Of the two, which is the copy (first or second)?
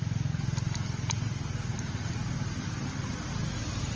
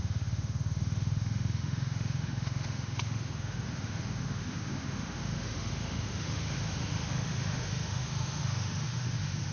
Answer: second